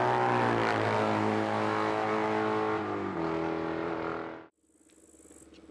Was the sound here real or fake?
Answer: real